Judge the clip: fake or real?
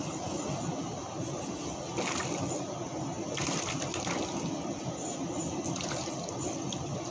real